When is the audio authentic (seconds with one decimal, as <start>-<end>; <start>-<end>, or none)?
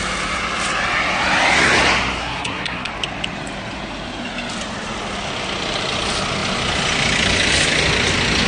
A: 0.0-2.2; 2.9-8.5